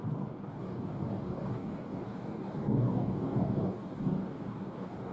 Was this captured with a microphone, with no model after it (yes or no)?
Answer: no